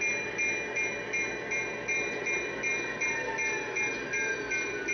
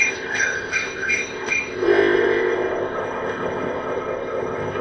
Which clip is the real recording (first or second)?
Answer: first